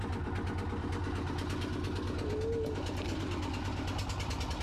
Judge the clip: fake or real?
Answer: real